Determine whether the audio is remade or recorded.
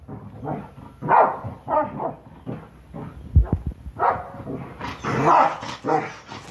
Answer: recorded